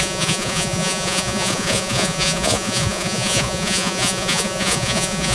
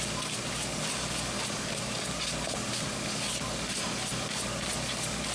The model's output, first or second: first